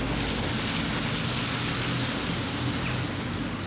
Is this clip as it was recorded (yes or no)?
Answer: yes